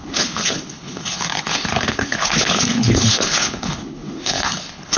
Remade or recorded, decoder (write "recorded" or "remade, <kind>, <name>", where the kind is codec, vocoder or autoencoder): remade, codec, HILCodec